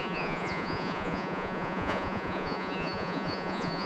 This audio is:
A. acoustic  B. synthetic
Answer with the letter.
B